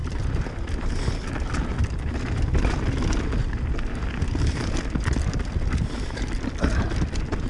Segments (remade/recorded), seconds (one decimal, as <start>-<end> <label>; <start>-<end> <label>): 0.0-7.5 recorded